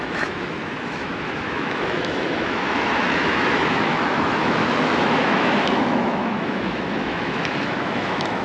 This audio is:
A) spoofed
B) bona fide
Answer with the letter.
A